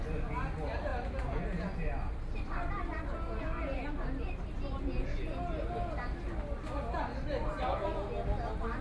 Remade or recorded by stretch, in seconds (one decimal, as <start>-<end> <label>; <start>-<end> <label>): 0.0-8.8 recorded